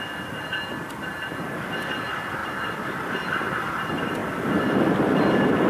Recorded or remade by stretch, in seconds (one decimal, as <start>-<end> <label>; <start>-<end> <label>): 0.0-2.4 remade; 2.4-3.7 recorded; 3.7-5.7 remade